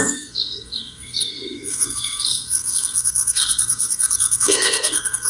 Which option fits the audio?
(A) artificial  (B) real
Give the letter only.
A